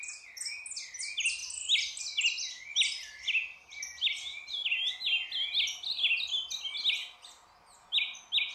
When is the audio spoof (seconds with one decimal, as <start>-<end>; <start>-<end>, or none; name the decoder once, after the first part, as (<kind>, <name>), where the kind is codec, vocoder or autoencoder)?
none